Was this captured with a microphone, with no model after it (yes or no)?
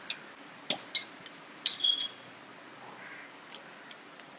yes